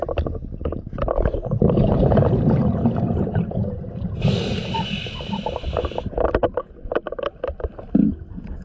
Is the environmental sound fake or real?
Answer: real